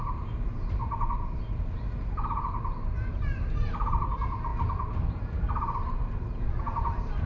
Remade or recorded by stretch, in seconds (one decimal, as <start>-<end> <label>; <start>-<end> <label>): 0.0-7.3 recorded